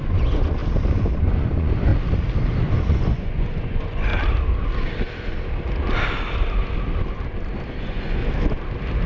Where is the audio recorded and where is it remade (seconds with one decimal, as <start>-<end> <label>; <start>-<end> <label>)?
0.0-0.6 remade; 0.6-1.2 recorded; 1.2-1.9 remade; 1.9-2.9 recorded; 2.9-4.1 remade; 4.1-7.8 recorded; 7.8-8.2 remade; 8.2-9.1 recorded